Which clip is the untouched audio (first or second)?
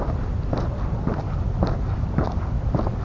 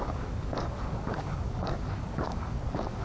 first